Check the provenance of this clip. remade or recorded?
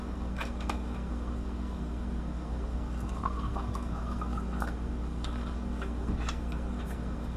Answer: remade